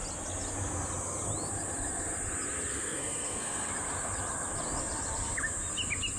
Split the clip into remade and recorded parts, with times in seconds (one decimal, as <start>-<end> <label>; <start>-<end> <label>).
0.0-2.7 recorded; 2.7-3.7 remade; 3.7-6.2 recorded